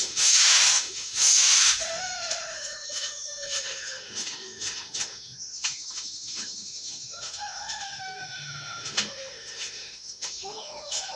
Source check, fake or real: fake